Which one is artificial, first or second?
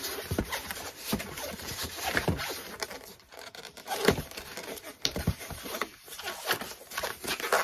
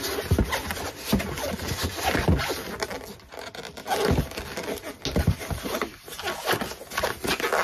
first